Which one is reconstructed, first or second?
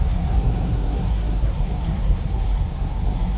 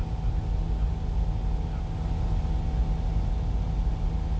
first